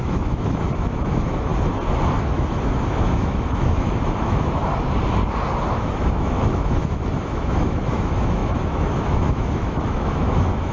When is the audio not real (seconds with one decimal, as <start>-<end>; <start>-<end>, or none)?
0.0-1.5; 2.2-4.6; 5.7-10.7